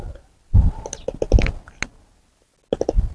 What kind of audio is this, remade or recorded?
recorded